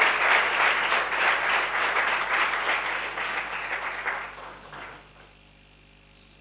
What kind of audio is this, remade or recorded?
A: recorded